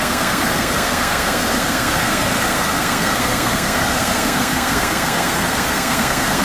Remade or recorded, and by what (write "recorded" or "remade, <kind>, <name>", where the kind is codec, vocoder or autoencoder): remade, codec, SNAC